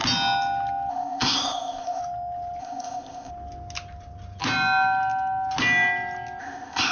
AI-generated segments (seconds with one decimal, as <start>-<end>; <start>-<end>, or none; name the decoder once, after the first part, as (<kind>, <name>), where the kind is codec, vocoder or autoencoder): 0.9-2.0 (codec, ZipCodec); 2.6-3.3; 6.4-6.9